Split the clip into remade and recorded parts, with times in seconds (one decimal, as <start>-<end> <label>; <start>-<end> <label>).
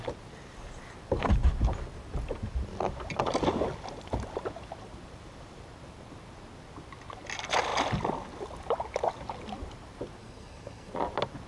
0.0-10.2 recorded; 10.2-10.9 remade; 10.9-11.5 recorded